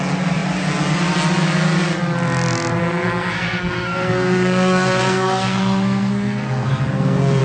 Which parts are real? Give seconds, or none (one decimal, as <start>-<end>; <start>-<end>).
0.0-2.8